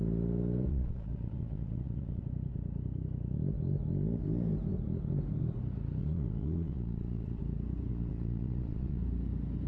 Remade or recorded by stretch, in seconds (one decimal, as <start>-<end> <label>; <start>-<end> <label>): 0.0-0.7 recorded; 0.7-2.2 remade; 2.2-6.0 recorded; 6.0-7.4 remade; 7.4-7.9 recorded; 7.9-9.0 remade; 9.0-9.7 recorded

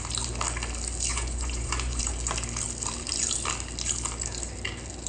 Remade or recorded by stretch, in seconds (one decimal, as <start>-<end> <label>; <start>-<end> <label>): 0.0-1.1 recorded; 1.1-2.0 remade; 2.0-5.1 recorded

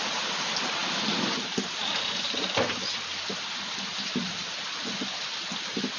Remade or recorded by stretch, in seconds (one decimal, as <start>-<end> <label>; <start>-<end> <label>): 0.0-6.0 recorded

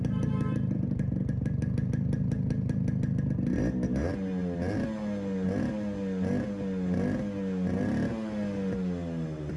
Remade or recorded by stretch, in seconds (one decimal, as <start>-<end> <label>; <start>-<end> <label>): 0.0-9.6 recorded

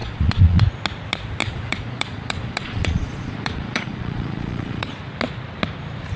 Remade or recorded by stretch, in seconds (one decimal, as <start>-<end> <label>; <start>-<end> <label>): 0.0-0.6 remade; 0.6-1.4 recorded; 1.4-4.9 remade; 4.9-6.2 recorded

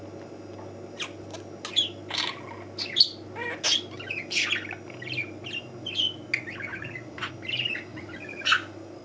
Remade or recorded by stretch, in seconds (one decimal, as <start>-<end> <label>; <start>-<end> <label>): 0.0-6.7 recorded; 6.7-7.3 remade; 7.3-7.9 recorded; 7.9-8.5 remade; 8.5-9.0 recorded